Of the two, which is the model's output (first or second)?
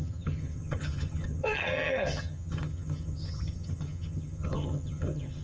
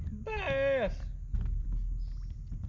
first